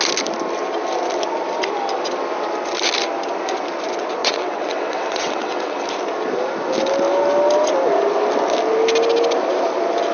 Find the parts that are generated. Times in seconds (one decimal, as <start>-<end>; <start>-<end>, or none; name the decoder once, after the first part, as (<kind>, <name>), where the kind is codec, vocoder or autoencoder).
4.2-5.8 (vocoder, WaveNeXt)